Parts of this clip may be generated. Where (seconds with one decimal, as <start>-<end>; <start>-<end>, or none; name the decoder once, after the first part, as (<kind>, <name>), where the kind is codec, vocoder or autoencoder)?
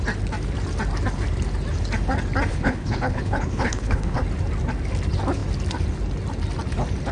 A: 2.5-4.2 (codec, HILCodec)